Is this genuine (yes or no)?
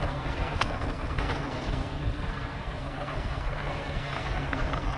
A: no